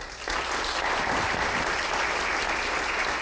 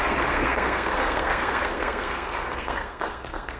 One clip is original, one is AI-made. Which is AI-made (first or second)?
second